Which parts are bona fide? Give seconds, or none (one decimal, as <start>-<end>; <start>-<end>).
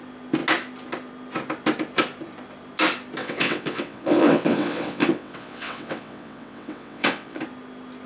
0.0-3.2; 7.4-8.1